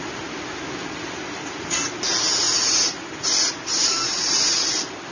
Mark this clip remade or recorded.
recorded